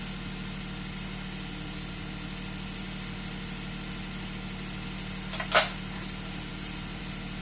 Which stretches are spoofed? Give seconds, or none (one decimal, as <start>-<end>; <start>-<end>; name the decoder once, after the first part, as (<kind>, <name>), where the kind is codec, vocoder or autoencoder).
none